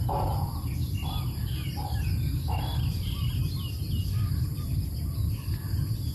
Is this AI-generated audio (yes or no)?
no